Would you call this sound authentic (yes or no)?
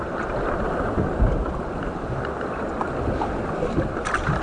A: yes